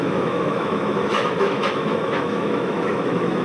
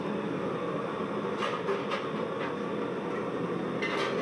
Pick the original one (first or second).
second